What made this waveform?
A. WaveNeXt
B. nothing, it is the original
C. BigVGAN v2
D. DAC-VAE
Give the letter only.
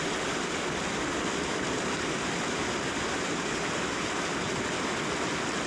B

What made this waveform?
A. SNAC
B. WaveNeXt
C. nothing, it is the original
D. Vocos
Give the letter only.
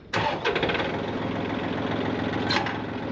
C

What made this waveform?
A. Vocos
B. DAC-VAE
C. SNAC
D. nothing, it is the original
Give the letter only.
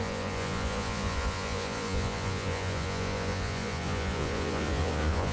A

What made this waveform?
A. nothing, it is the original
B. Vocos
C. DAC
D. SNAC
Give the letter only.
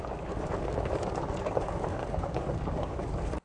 C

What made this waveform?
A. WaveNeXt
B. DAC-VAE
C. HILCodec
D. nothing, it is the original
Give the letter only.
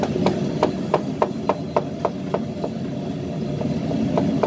D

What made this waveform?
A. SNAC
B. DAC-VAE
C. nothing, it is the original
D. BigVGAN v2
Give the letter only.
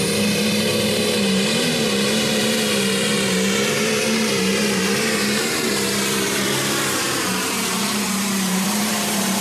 D